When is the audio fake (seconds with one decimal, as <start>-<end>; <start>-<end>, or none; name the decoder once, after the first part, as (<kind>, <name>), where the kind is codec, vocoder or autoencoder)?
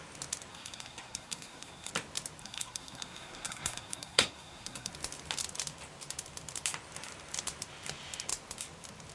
0.5-1.9 (codec, SNAC); 2.4-4.9